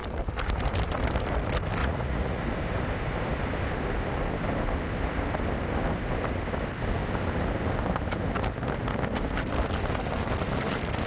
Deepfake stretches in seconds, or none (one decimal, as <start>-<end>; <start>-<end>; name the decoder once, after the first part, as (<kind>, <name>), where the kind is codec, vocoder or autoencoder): 1.8-2.4 (vocoder, Vocos)